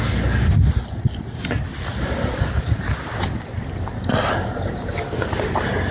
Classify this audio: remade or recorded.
recorded